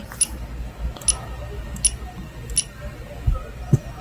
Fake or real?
real